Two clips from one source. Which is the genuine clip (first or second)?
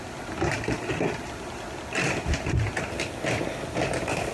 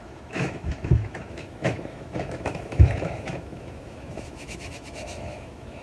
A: first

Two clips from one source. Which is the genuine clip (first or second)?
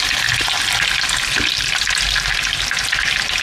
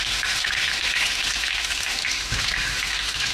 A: first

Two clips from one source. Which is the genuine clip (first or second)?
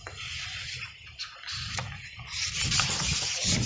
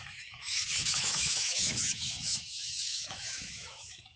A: first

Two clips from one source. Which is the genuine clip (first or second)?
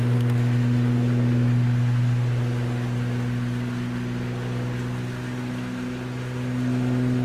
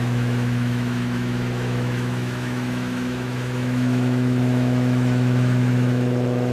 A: first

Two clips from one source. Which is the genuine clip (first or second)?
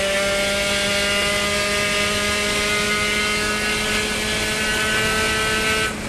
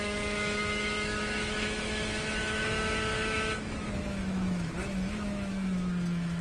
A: first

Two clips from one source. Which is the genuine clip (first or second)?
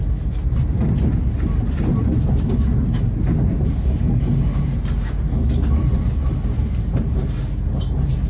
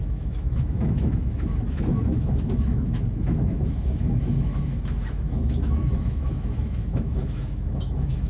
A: first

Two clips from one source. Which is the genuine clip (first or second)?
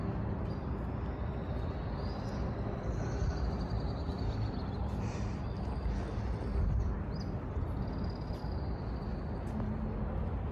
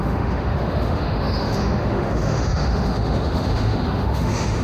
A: first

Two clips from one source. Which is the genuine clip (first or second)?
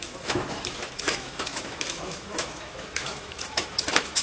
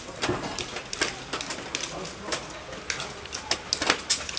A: second